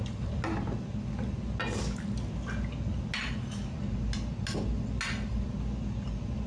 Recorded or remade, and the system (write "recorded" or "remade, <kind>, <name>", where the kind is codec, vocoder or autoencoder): recorded